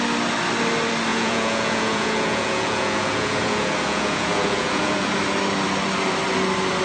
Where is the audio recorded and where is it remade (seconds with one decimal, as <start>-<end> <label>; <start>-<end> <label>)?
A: 0.0-1.1 recorded; 1.1-5.1 remade; 5.1-6.8 recorded